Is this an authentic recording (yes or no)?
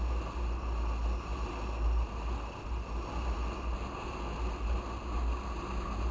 yes